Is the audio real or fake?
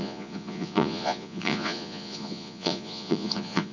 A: fake